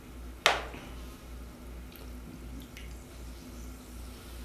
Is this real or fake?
real